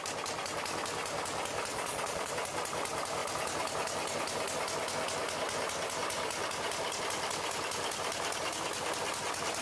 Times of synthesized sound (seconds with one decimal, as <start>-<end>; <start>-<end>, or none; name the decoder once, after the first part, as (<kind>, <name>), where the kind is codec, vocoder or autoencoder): 1.7-2.3 (vocoder, Vocos)